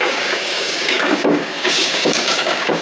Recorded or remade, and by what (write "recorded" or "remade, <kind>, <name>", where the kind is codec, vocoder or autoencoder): remade, codec, DAC